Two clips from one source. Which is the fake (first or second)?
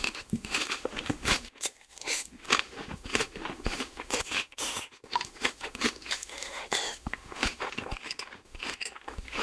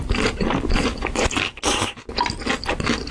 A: first